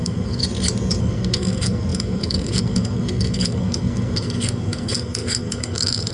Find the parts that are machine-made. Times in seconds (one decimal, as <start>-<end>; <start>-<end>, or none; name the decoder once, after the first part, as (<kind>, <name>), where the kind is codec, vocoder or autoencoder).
0.0-0.4 (codec, SNAC); 1.0-6.1

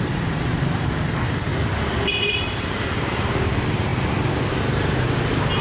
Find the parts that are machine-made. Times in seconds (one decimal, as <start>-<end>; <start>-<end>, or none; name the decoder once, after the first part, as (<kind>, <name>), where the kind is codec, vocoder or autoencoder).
0.0-1.5 (vocoder, BigVGAN v2); 2.1-3.9

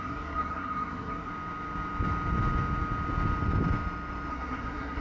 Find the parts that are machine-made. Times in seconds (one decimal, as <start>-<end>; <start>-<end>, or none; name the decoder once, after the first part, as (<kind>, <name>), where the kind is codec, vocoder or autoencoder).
0.0-1.3 (codec, SNAC); 4.3-5.0

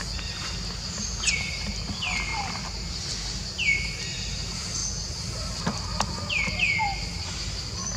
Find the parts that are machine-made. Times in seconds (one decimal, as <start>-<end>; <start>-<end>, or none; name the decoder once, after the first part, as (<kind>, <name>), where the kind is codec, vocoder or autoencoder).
none